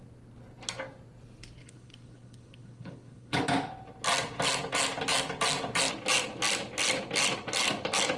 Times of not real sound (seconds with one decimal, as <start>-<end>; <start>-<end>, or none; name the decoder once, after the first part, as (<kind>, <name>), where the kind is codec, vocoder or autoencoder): 1.6-3.4 (codec, HILCodec)